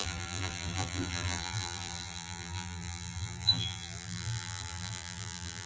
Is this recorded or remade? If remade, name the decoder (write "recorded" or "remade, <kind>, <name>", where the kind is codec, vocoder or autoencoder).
remade, vocoder, BigVGAN v2